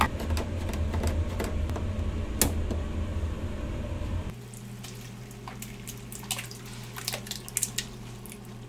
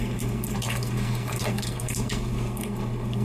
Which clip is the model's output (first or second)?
second